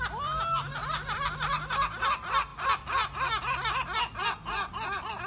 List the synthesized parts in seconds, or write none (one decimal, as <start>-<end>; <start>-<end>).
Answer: none